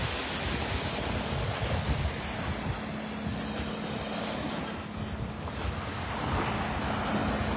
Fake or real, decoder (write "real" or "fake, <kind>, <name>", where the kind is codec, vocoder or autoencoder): real